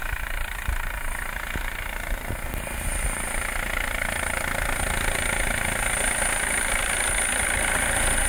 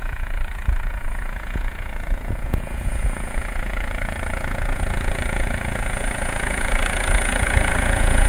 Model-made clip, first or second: second